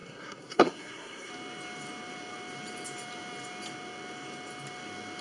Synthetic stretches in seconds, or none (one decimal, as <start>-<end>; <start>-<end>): 0.0-1.3